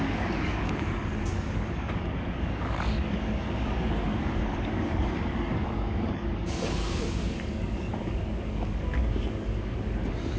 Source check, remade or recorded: remade